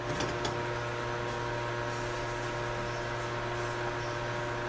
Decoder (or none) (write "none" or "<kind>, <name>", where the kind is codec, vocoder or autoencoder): none